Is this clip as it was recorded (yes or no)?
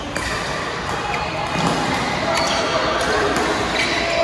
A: yes